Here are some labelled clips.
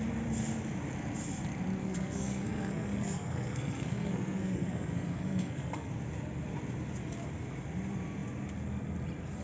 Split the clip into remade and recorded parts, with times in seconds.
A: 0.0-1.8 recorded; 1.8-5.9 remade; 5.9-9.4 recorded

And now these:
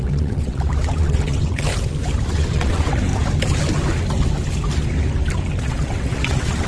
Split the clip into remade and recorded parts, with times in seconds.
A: 0.0-1.7 remade; 1.7-2.3 recorded; 2.3-3.1 remade; 3.1-5.6 recorded; 5.6-6.7 remade

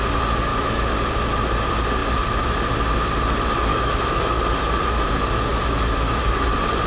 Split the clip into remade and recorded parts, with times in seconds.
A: 0.0-0.5 recorded; 0.5-1.0 remade; 1.0-3.7 recorded; 3.7-4.4 remade; 4.4-5.5 recorded; 5.5-6.2 remade; 6.2-6.9 recorded

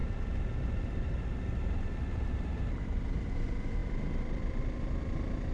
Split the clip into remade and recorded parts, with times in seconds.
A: 0.0-5.5 recorded

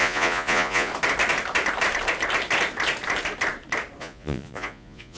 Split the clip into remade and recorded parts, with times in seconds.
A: 0.0-0.9 remade; 0.9-4.0 recorded; 4.0-5.2 remade

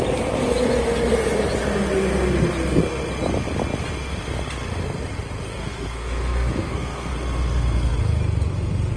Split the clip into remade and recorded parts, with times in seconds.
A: 0.0-5.5 recorded; 5.5-7.1 remade; 7.1-9.0 recorded

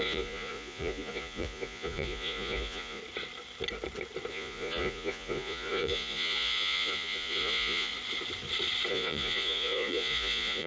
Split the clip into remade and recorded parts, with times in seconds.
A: 0.0-3.0 remade; 3.0-4.3 recorded; 4.3-7.9 remade; 7.9-8.9 recorded; 8.9-10.7 remade

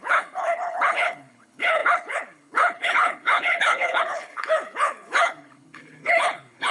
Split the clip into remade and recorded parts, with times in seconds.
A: 0.0-6.7 remade